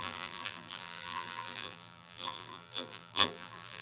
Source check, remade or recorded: remade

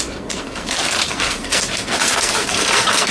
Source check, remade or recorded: remade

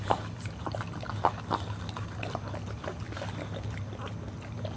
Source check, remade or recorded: recorded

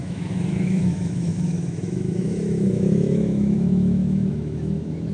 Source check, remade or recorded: remade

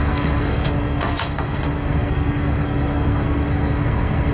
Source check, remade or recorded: remade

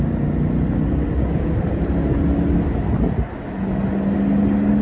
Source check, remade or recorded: recorded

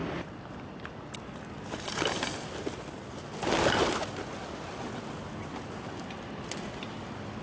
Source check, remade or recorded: recorded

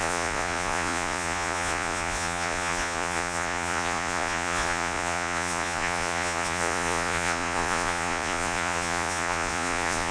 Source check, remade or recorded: remade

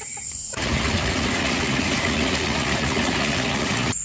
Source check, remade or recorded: remade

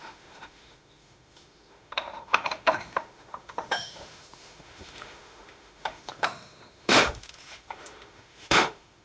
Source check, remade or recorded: remade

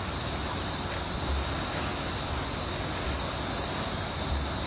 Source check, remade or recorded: recorded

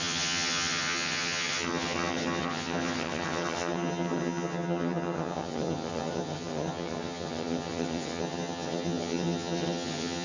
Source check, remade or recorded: remade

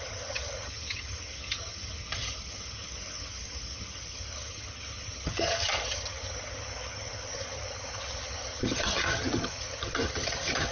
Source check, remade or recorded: remade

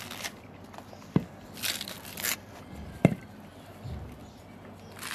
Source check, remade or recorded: recorded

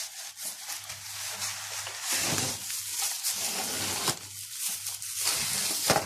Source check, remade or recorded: recorded